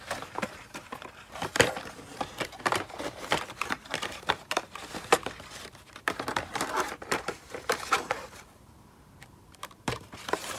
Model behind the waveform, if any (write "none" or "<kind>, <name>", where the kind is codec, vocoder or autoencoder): vocoder, BigVGAN v2